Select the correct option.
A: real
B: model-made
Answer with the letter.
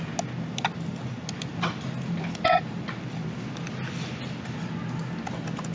A